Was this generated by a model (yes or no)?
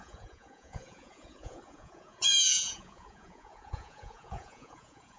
yes